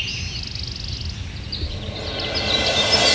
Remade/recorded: recorded